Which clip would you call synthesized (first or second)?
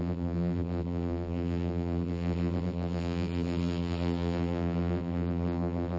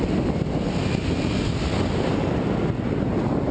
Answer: first